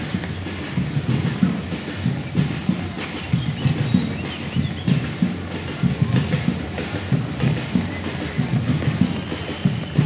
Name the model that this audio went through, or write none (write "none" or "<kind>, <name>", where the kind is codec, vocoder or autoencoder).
none